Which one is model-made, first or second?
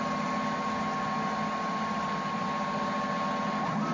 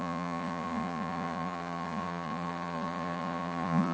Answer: second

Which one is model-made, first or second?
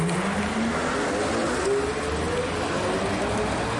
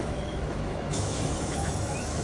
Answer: second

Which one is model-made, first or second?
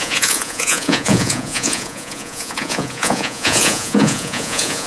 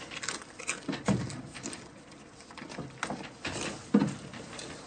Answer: first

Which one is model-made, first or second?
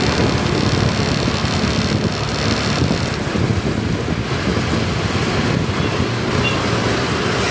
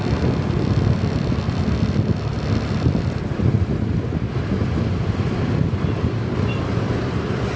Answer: second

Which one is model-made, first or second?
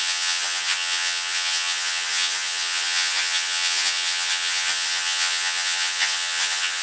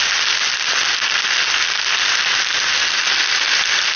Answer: first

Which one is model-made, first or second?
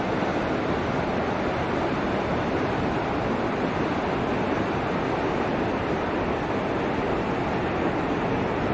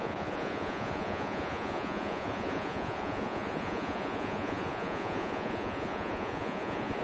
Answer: second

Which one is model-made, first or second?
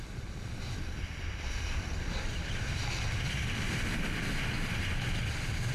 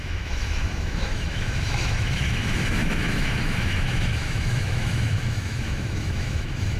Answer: second